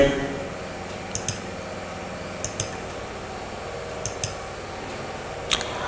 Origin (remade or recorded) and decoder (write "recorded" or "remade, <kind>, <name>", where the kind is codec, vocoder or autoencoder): recorded